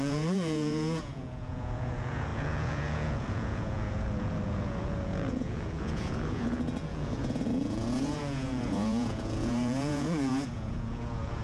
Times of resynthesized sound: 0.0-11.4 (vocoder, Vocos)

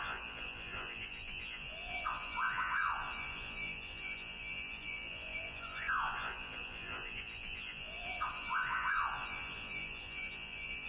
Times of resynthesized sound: 0.0-10.9 (vocoder, Vocos)

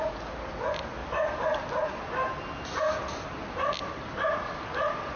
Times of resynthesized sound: none

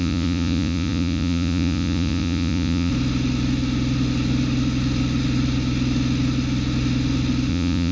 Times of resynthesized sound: 0.0-2.9 (vocoder, Vocos); 7.5-7.9

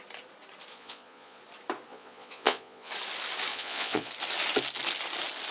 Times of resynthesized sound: 0.7-1.4 (vocoder, Vocos); 1.9-2.9; 3.5-4.1

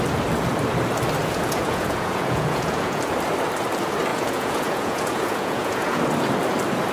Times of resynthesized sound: 1.2-3.0 (vocoder, Vocos); 4.1-6.0

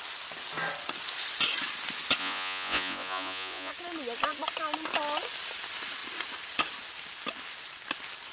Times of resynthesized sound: 2.2-3.7 (vocoder, Vocos)